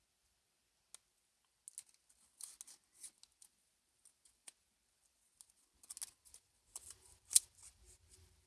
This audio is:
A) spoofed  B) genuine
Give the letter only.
B